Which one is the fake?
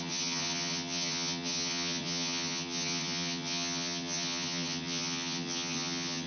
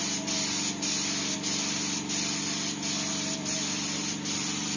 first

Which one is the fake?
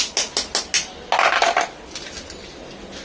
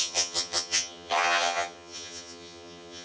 second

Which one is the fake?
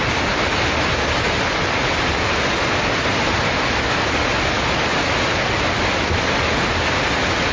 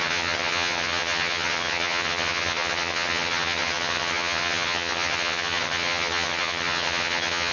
second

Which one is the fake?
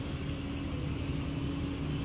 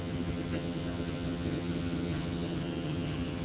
second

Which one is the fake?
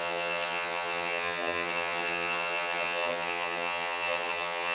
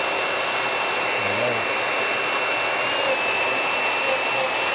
first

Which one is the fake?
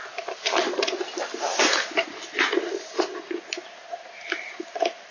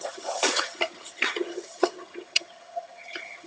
second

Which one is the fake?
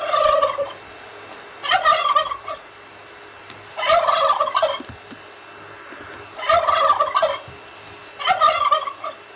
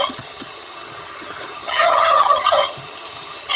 second